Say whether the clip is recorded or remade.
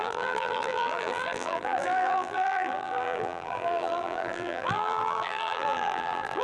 remade